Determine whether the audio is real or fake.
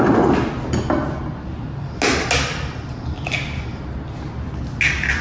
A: real